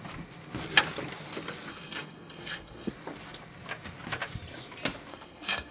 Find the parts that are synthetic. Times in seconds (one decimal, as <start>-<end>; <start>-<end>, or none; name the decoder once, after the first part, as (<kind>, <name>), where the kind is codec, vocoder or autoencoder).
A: 1.7-2.9 (codec, SNAC); 5.1-5.7